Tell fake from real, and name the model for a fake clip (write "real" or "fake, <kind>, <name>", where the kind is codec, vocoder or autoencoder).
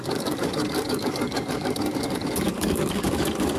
fake, codec, DAC